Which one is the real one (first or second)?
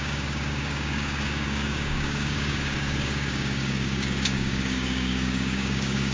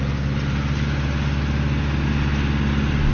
second